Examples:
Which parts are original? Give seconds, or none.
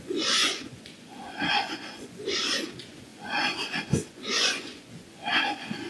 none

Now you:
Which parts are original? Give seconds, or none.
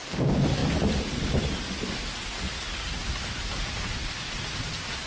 0.0-5.1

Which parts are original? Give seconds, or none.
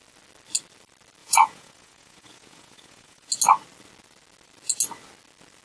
0.0-1.2; 3.3-5.6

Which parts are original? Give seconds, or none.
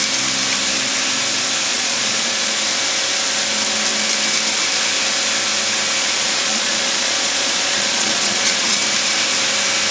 0.0-1.7; 2.5-6.0; 8.8-9.9